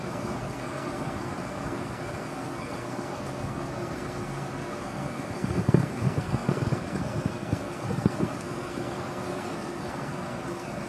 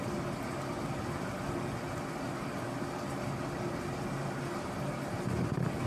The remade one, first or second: first